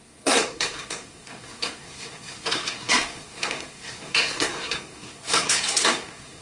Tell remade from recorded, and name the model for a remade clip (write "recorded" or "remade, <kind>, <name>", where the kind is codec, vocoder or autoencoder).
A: remade, codec, SNAC